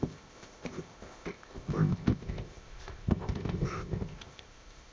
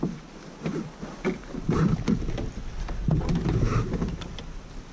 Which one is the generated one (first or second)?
first